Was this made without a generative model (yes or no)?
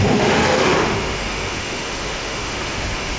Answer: no